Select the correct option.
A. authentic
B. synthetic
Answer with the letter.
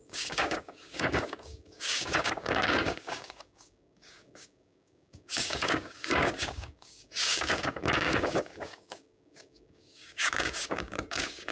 B